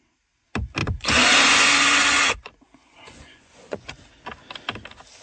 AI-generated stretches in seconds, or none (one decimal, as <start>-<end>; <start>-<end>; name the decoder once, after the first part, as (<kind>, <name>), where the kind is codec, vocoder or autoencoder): 0.8-3.9 (vocoder, Vocos)